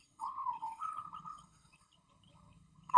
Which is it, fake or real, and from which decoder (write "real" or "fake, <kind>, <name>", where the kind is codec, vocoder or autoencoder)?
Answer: fake, codec, HILCodec